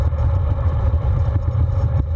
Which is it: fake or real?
fake